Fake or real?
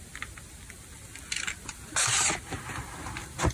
real